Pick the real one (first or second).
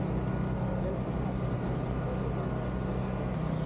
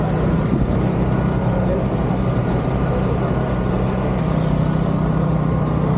first